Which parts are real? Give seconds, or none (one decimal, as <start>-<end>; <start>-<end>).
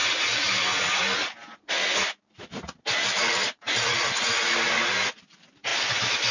0.0-6.3